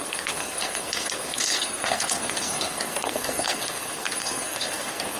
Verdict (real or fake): fake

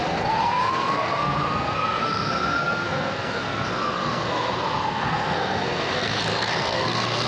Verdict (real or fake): fake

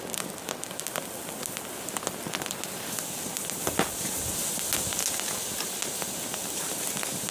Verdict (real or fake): real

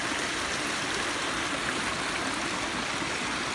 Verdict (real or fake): real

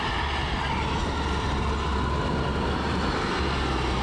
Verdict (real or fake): real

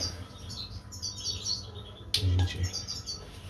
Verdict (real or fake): real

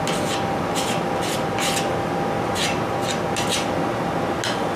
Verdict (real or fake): real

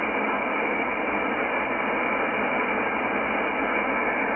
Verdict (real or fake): real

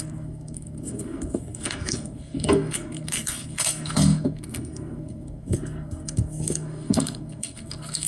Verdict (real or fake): fake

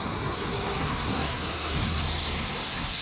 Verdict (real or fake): fake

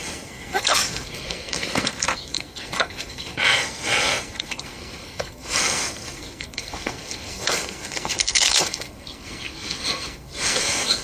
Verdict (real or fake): fake